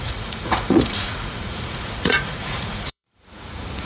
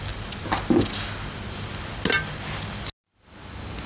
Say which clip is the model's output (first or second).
first